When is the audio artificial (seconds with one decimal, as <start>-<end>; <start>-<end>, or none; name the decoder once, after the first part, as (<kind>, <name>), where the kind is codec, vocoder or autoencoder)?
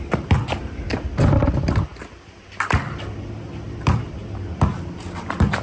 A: none